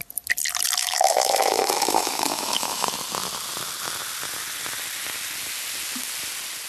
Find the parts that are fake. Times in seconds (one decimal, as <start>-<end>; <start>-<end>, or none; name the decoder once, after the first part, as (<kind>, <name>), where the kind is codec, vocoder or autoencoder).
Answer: 0.8-2.9 (autoencoder, DAC-VAE)